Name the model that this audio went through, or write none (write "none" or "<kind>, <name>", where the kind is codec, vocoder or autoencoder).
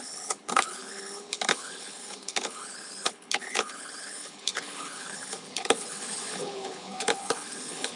codec, HILCodec